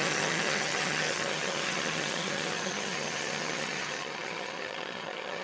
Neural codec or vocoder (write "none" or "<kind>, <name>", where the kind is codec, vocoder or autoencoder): vocoder, HiFi-GAN